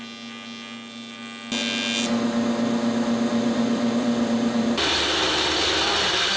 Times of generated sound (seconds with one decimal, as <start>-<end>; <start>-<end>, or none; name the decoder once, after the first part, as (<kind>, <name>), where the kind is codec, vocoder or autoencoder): 3.3-5.8 (vocoder, BigVGAN v2)